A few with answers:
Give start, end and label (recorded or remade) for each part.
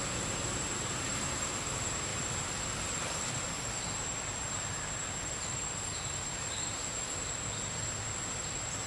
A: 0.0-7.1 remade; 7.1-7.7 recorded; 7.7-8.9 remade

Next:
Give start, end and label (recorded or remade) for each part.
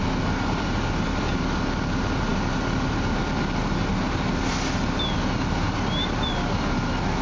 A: 0.0-7.2 recorded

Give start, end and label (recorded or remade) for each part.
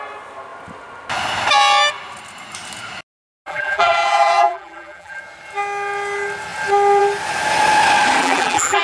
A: 0.0-3.5 recorded; 3.5-5.2 remade; 5.2-8.2 recorded; 8.2-8.8 remade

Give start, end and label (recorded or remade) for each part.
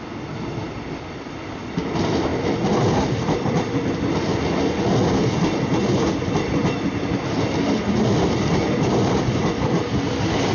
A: 0.0-10.5 recorded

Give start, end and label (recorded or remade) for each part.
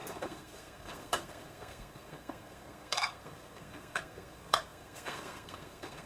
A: 0.0-6.1 remade